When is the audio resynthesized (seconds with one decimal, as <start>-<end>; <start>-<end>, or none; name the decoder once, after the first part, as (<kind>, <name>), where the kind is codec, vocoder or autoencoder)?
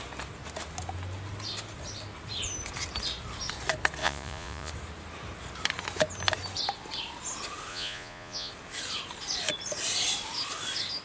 4.0-4.7 (vocoder, Vocos); 7.7-8.5